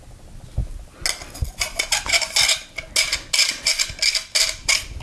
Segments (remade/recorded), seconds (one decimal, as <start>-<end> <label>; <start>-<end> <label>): 0.0-5.0 recorded